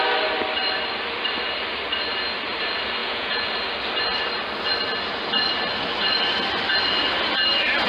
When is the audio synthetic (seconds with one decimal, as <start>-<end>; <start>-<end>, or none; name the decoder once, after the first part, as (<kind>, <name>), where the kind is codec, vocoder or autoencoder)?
3.0-3.5 (vocoder, Vocos)